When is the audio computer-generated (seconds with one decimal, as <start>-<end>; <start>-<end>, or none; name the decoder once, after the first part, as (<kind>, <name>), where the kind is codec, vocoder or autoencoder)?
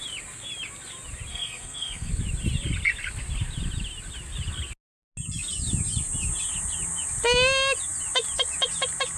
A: 1.3-2.1 (codec, SNAC)